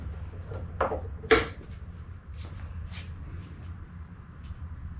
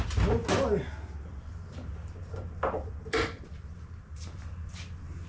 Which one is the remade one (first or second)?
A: first